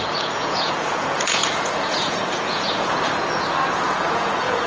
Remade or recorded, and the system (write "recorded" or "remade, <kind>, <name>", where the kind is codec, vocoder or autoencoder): remade, vocoder, Vocos